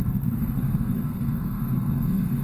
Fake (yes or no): yes